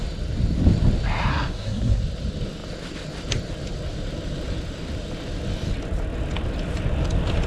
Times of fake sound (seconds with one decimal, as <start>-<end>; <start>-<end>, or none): 1.3-2.0